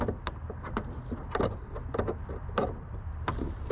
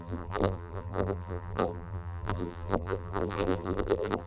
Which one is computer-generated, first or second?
second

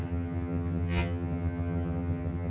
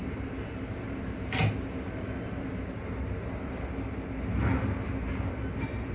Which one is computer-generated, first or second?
first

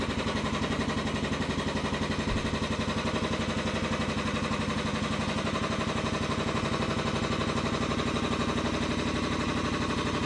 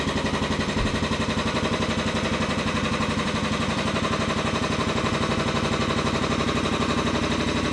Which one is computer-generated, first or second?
second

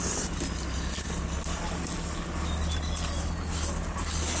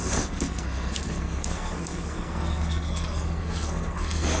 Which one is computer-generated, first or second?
second